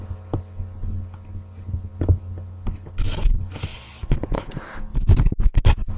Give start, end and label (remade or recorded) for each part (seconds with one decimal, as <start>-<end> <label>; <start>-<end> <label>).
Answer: 0.0-3.7 recorded; 3.7-4.5 remade; 4.5-6.0 recorded